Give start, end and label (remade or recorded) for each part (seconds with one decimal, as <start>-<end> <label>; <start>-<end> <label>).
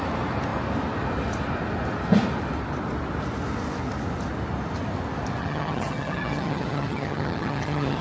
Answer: 0.0-5.4 recorded; 5.4-8.0 remade